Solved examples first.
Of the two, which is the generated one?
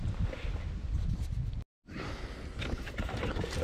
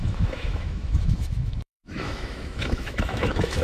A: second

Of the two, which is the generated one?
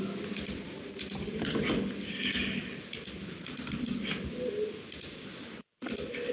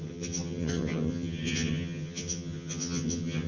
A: second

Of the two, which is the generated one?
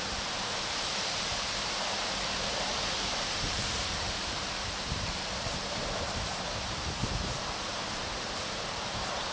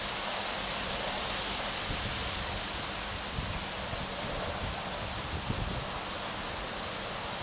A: first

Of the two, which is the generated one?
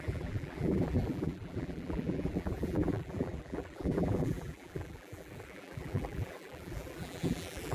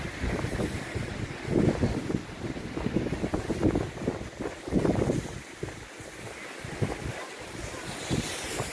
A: first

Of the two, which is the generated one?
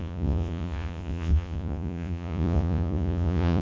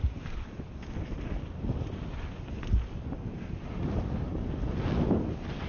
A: first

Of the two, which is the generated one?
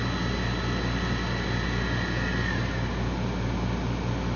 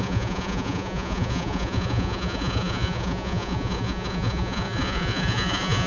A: second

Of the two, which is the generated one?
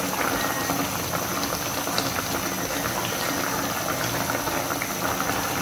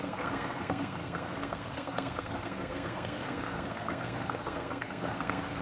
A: second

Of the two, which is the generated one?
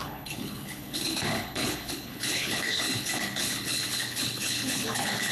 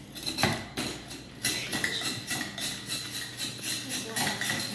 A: first